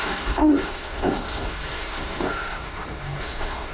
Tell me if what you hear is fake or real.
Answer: fake